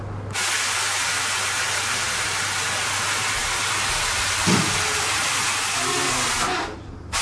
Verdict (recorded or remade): recorded